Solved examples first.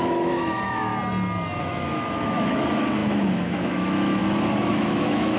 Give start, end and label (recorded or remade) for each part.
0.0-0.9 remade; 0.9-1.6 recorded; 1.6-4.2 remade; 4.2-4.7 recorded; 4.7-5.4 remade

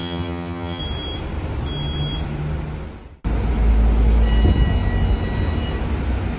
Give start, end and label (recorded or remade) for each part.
0.0-0.8 remade; 0.8-6.4 recorded

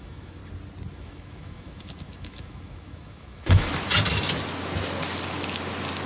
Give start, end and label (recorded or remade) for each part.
0.0-0.4 remade; 0.4-0.9 recorded; 0.9-3.7 remade; 3.7-6.1 recorded

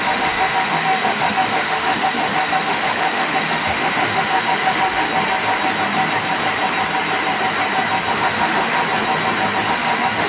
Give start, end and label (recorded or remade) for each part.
0.0-5.1 remade; 5.1-8.1 recorded; 8.1-8.8 remade; 8.8-9.6 recorded; 9.6-10.3 remade

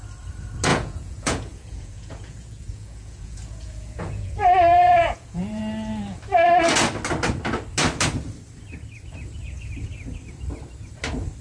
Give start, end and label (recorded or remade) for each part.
0.0-0.7 recorded; 0.7-5.6 remade; 5.6-11.4 recorded

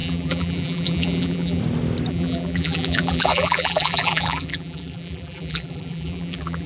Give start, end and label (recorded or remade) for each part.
0.0-1.6 remade; 1.6-2.1 recorded; 2.1-6.7 remade

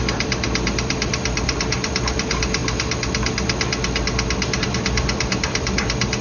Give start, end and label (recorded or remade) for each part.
0.0-2.6 remade; 2.6-4.6 recorded; 4.6-6.2 remade

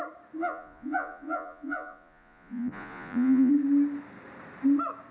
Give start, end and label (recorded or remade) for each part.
0.0-0.4 recorded; 0.4-3.5 remade; 3.5-5.1 recorded